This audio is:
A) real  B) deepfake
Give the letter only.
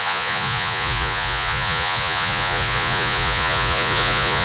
B